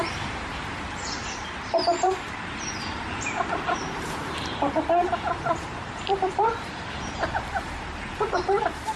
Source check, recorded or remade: remade